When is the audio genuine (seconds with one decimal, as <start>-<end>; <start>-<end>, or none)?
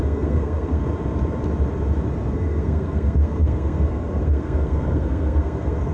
0.8-2.3